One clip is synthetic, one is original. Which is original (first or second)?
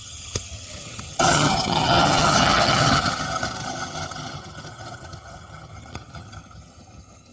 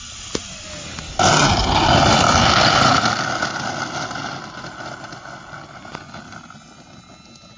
second